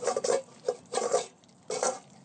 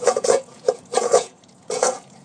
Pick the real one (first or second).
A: first